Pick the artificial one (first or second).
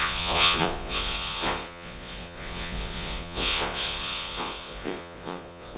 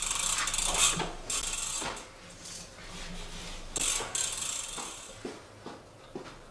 first